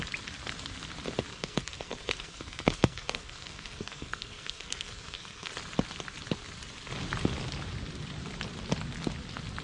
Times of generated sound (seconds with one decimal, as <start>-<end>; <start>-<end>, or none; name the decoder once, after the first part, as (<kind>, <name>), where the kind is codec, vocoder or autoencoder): 1.3-5.5 (codec, SNAC)